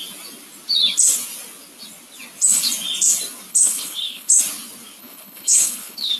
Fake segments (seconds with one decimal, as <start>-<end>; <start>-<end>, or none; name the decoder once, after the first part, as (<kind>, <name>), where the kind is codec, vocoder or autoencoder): 3.5-4.4 (codec, HILCodec); 5.0-6.2